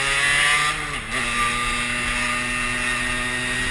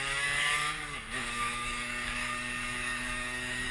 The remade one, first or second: second